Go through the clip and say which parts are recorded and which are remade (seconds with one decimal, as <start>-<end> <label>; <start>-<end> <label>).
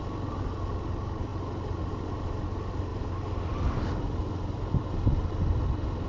0.0-6.1 recorded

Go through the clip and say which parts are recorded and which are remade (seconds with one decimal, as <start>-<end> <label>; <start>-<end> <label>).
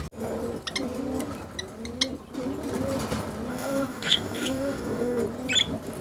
0.0-3.5 recorded; 3.5-5.2 remade; 5.2-6.0 recorded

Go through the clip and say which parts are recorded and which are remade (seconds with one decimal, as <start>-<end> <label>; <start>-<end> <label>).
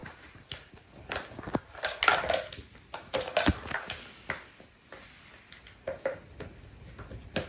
0.0-0.8 remade; 0.8-7.5 recorded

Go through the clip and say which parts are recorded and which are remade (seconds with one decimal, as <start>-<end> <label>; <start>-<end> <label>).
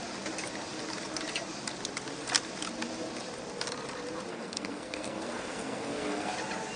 0.0-4.3 recorded; 4.3-6.3 remade; 6.3-6.8 recorded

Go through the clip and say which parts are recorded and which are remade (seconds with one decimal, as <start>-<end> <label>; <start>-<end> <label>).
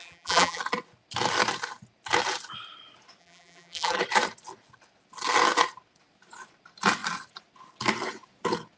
0.0-0.6 remade; 0.6-3.2 recorded; 3.2-4.0 remade; 4.0-8.8 recorded